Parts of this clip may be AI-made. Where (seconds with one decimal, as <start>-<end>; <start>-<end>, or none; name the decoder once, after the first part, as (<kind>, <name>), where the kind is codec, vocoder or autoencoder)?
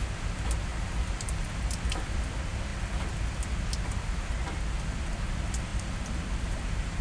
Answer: 0.7-1.5 (vocoder, BigVGAN v2); 5.7-6.6